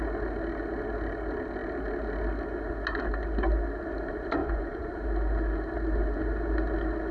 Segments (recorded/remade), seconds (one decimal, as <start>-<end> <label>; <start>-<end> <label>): 0.0-4.4 recorded; 4.4-4.9 remade; 4.9-7.1 recorded